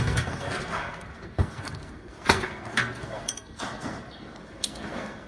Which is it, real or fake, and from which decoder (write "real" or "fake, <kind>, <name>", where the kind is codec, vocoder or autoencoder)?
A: fake, codec, SNAC